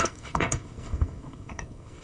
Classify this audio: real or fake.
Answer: fake